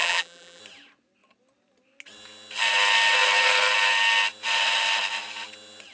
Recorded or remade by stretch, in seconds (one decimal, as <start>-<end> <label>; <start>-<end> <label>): 0.0-0.6 remade; 0.6-5.9 recorded